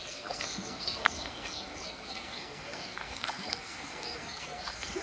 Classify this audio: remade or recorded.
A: remade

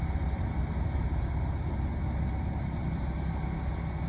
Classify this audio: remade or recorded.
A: recorded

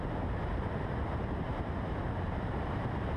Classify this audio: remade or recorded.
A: remade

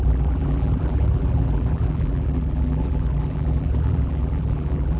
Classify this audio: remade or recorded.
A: remade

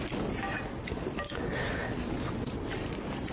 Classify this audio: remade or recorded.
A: recorded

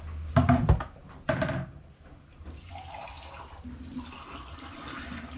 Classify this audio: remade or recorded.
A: recorded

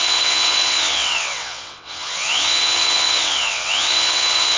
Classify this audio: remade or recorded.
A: remade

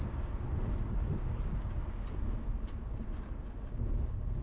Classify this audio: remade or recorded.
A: recorded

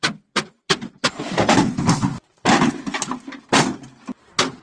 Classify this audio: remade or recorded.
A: recorded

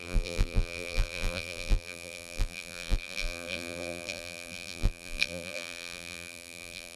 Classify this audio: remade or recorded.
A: remade